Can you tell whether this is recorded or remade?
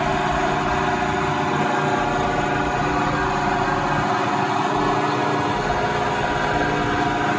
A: recorded